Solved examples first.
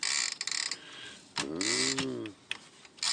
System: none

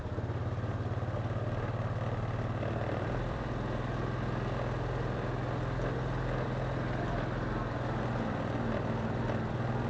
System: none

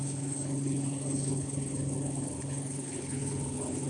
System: codec, HILCodec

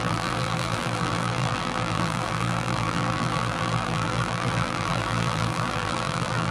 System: vocoder, BigVGAN v2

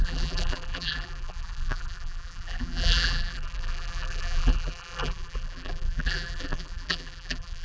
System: vocoder, BigVGAN v2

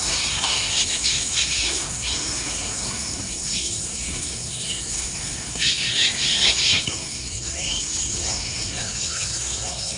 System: codec, SNAC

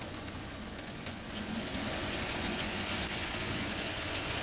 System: vocoder, Vocos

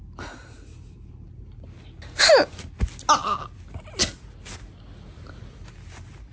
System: none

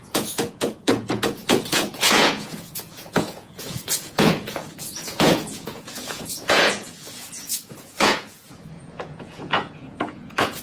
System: vocoder, Vocos